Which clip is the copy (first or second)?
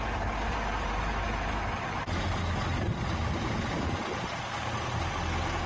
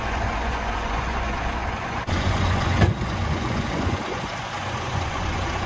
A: second